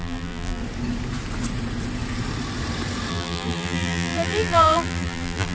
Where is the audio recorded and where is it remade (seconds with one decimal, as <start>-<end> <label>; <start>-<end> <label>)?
0.0-0.6 remade; 0.6-3.1 recorded; 3.1-5.5 remade